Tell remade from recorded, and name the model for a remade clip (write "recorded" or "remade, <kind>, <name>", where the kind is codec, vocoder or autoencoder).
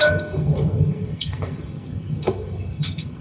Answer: remade, codec, SNAC